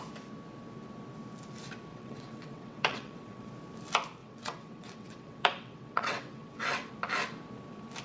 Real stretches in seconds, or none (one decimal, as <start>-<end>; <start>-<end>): 0.0-1.9; 3.5-4.2; 6.9-8.0